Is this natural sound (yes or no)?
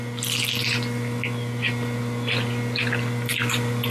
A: yes